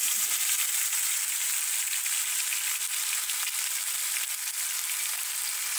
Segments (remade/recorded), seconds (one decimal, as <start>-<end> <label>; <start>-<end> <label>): 0.0-5.8 recorded